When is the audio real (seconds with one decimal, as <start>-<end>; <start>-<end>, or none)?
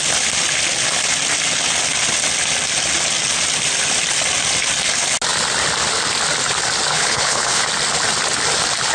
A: 0.0-6.9; 7.6-8.9